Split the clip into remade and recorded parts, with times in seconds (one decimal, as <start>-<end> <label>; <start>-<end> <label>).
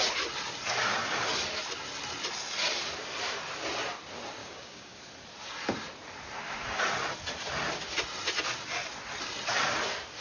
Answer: 0.0-4.4 recorded; 4.4-5.0 remade; 5.0-10.2 recorded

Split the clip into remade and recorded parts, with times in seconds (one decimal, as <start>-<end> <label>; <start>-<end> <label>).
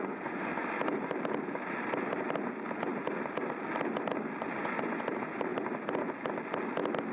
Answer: 0.0-0.5 remade; 0.5-4.6 recorded; 4.6-5.5 remade; 5.5-7.1 recorded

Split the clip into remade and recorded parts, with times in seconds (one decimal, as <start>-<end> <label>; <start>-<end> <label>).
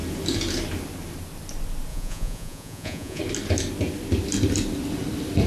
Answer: 0.0-1.9 recorded; 1.9-3.2 remade; 3.2-5.5 recorded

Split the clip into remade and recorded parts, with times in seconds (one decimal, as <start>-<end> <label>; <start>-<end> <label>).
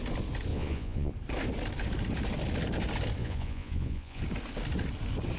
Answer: 0.0-0.5 recorded; 0.5-1.1 remade; 1.1-3.2 recorded; 3.2-4.2 remade; 4.2-5.4 recorded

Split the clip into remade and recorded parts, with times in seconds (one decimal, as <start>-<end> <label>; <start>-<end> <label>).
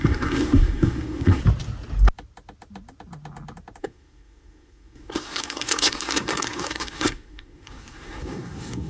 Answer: 0.0-1.4 remade; 1.4-3.8 recorded; 3.8-8.9 remade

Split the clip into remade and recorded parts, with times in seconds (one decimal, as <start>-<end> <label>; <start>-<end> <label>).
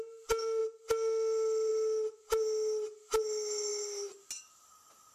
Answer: 0.0-5.1 recorded